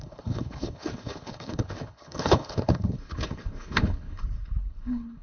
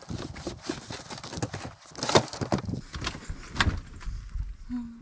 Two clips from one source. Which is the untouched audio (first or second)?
second